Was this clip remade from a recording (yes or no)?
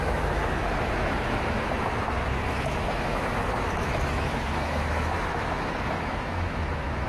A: yes